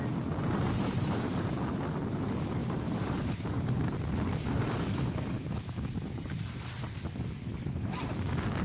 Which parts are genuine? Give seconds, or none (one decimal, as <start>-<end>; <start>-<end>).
0.0-0.4; 1.5-2.6; 3.9-8.6